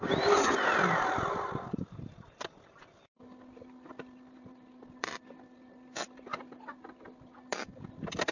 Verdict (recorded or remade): remade